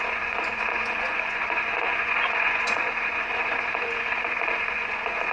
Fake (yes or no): yes